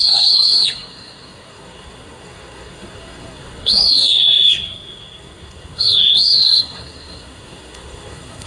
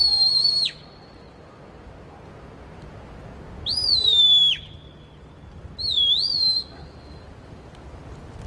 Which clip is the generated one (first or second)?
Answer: first